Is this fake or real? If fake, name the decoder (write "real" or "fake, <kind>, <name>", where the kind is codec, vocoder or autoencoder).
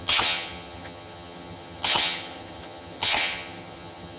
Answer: fake, vocoder, HiFi-GAN